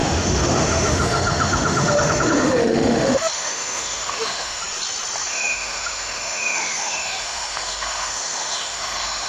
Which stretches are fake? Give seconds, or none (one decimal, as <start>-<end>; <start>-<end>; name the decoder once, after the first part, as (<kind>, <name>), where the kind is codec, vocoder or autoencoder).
0.0-4.6 (autoencoder, DAC-VAE); 5.3-9.3